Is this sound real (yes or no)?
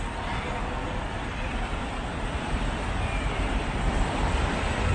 yes